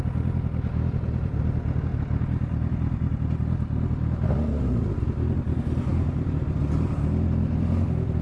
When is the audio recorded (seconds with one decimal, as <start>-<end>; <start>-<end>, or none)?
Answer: 0.0-8.2